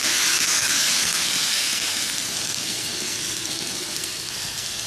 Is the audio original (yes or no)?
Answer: no